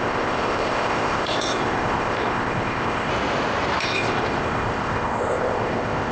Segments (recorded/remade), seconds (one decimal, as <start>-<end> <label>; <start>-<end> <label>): 0.0-3.1 remade; 3.1-3.8 recorded; 3.8-6.1 remade